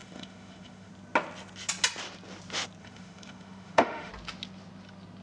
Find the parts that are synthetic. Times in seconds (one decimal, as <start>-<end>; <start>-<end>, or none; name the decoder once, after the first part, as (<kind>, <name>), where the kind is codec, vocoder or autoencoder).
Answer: 0.0-0.9 (autoencoder, DAC-VAE); 2.8-4.1